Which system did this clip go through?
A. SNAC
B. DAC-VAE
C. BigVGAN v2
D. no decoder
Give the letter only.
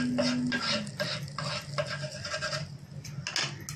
D